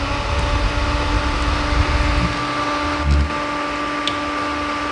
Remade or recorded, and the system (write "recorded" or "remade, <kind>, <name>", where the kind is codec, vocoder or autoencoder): recorded